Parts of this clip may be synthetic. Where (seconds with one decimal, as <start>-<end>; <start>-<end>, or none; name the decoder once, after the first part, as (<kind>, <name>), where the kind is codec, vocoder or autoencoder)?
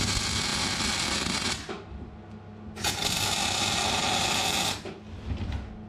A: none